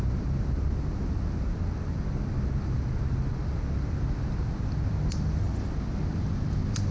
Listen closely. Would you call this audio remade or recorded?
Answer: recorded